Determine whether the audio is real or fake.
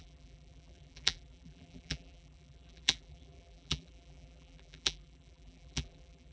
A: fake